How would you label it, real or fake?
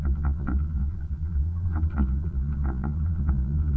fake